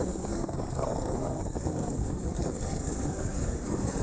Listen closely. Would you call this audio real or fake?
fake